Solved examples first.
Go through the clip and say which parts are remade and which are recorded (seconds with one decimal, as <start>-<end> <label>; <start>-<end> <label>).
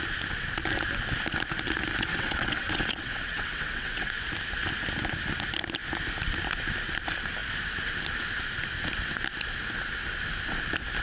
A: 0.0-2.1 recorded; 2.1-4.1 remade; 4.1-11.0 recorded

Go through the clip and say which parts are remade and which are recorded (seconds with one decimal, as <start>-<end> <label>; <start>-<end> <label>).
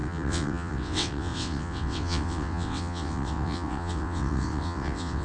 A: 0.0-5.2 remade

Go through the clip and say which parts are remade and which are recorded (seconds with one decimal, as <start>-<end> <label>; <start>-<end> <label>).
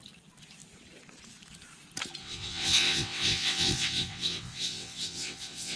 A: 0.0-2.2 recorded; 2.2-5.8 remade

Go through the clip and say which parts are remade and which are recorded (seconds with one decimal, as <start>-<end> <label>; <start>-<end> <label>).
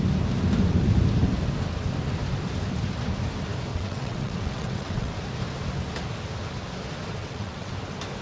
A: 0.0-3.7 recorded; 3.7-5.1 remade; 5.1-7.2 recorded; 7.2-7.7 remade; 7.7-8.2 recorded